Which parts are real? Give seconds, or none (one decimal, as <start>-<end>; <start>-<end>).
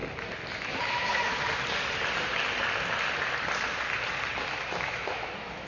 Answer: 0.0-0.8; 1.3-4.7